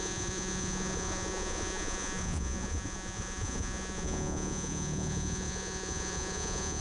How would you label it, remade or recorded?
remade